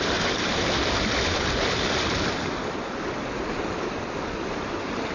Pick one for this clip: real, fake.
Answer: real